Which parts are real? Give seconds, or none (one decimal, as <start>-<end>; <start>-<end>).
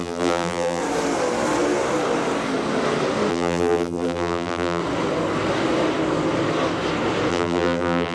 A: 0.8-3.3; 4.8-7.3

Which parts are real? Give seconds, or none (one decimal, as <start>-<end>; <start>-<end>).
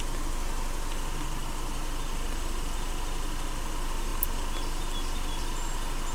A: 0.0-6.1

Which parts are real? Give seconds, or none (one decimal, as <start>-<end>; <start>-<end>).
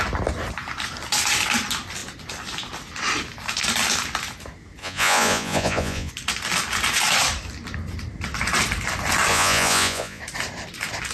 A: 0.0-4.8; 6.1-9.3; 10.2-11.1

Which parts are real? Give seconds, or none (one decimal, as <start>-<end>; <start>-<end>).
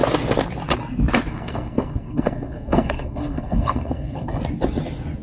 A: 0.0-1.3; 4.4-5.2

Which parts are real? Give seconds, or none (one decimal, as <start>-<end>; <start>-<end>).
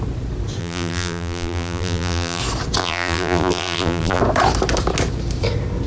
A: 0.0-0.6; 2.4-2.8; 4.2-5.9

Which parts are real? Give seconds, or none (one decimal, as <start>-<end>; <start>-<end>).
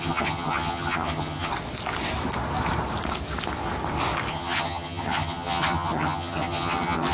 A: 1.5-4.3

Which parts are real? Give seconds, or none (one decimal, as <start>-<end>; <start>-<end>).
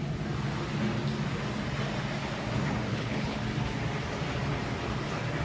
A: 0.0-2.9; 3.4-5.4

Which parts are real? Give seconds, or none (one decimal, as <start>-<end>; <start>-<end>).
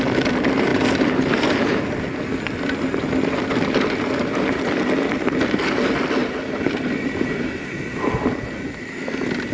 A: 0.0-6.2; 7.8-9.5